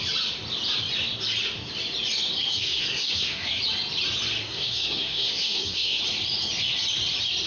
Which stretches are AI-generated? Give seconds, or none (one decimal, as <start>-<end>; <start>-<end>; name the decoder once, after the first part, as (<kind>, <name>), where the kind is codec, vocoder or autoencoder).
2.5-3.6 (codec, SNAC); 4.4-6.0